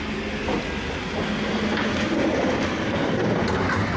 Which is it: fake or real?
real